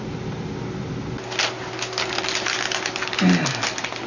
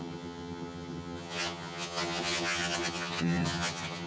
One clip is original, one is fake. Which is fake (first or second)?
second